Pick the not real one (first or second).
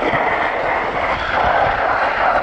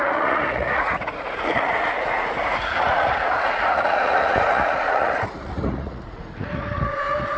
second